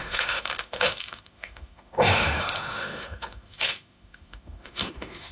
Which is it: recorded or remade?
remade